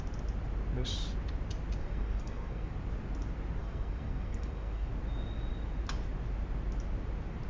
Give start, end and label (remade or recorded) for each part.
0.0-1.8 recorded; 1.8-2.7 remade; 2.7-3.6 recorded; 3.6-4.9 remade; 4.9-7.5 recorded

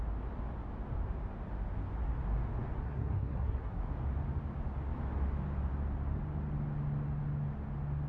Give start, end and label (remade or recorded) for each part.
0.0-2.8 recorded; 2.8-3.8 remade; 3.8-8.1 recorded